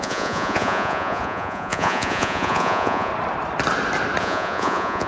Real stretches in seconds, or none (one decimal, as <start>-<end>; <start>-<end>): 3.1-4.2